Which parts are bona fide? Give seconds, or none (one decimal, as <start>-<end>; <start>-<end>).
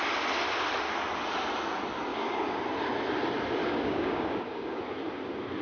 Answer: 0.0-2.1; 2.6-3.6; 4.8-5.6